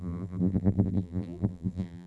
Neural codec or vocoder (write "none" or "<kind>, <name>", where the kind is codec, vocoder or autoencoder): vocoder, BigVGAN v2